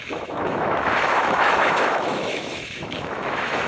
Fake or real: fake